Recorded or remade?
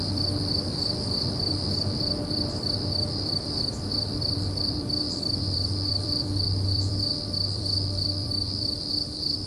remade